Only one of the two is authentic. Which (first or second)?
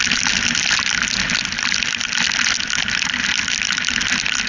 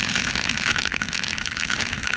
first